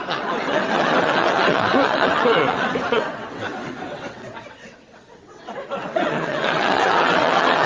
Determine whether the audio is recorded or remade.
remade